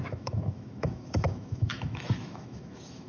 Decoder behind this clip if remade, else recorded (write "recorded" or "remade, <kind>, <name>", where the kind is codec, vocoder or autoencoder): remade, autoencoder, DAC-VAE